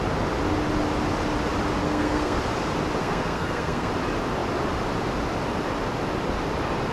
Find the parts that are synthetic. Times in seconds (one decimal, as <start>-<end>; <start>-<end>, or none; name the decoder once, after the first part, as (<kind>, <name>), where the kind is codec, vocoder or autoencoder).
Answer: 1.8-2.4 (codec, SNAC); 3.0-3.9